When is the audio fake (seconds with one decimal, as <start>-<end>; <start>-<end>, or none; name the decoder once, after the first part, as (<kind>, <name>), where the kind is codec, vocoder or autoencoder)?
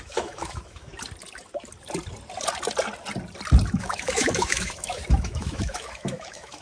0.0-0.9 (autoencoder, DAC-VAE); 3.7-6.6